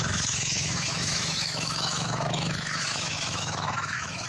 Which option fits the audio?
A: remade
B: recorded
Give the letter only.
A